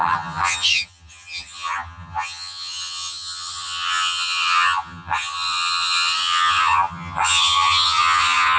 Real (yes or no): no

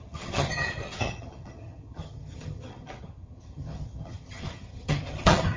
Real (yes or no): no